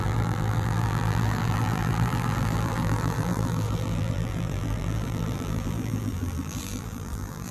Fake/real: fake